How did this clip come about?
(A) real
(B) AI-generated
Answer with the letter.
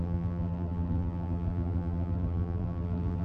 B